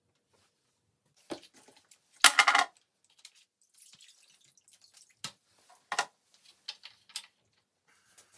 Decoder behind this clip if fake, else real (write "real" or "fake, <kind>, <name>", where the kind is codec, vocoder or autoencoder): real